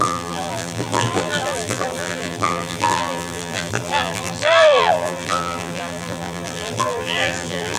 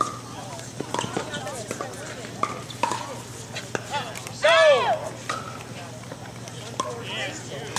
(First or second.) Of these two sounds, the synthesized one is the first